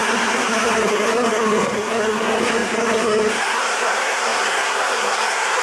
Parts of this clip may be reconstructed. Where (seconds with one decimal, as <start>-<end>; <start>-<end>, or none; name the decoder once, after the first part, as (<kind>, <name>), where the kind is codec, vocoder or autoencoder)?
0.0-5.6 (codec, SNAC)